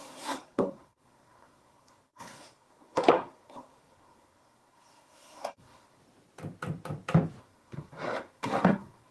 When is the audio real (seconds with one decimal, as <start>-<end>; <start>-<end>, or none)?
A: 6.0-7.4